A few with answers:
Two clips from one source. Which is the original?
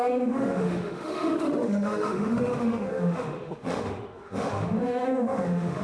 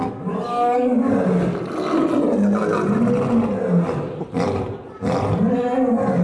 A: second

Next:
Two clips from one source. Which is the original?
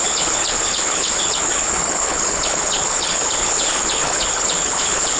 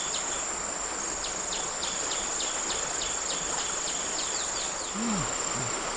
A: second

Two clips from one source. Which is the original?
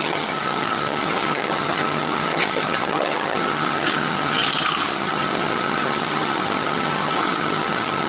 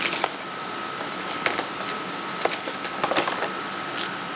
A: second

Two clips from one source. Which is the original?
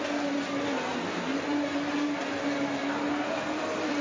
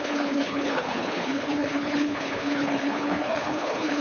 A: first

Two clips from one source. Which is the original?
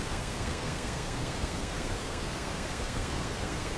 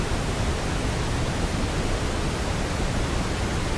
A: second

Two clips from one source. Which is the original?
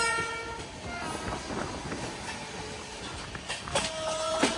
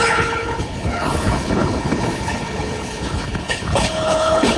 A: first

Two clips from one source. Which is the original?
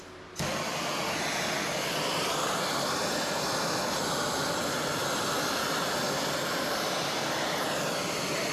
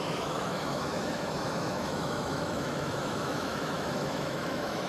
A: first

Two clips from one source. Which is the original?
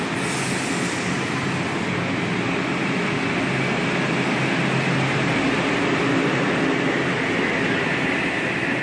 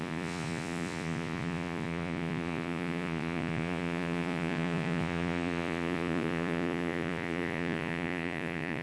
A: first